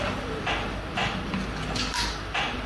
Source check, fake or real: real